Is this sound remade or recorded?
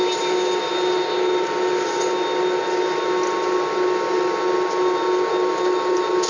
recorded